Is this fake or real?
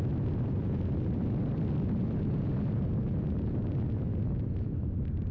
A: real